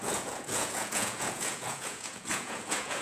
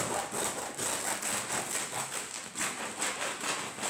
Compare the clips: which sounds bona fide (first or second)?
second